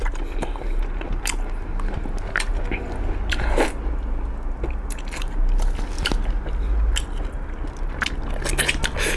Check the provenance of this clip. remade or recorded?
recorded